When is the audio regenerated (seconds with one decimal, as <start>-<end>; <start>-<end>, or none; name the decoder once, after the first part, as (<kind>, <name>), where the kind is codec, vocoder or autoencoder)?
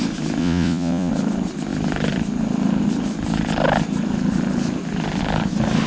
0.4-1.1 (vocoder, Vocos)